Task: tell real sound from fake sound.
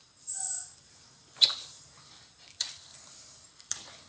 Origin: fake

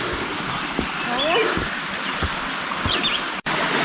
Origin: real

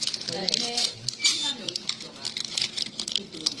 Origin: fake